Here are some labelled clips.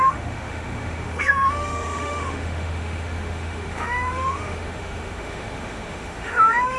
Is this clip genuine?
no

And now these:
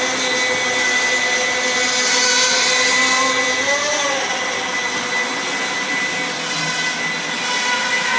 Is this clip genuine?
yes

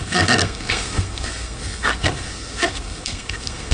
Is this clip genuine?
no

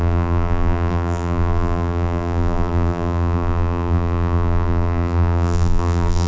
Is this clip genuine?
no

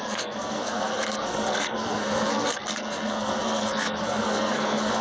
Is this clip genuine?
no